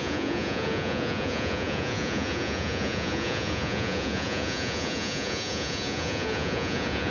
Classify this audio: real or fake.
fake